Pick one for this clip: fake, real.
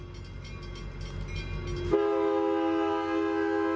real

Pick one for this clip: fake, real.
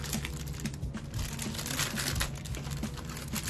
real